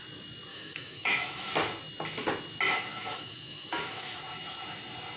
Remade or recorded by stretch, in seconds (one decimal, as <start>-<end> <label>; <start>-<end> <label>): 0.0-0.5 recorded; 0.5-1.5 remade; 1.5-2.9 recorded; 2.9-4.2 remade; 4.2-5.2 recorded